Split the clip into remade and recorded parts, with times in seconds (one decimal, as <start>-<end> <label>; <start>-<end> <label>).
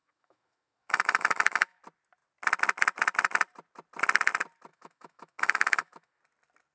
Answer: 0.0-1.8 remade; 1.8-4.7 recorded; 4.7-6.2 remade; 6.2-6.7 recorded